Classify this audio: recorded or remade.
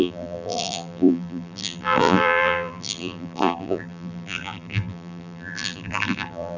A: remade